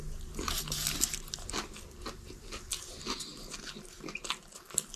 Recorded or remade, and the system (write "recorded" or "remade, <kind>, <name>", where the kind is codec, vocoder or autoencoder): recorded